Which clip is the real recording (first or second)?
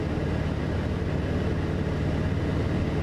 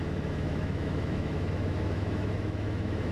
first